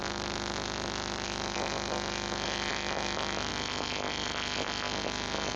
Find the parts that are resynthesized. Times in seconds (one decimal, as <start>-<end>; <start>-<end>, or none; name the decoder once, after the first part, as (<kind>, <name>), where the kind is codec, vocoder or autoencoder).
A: none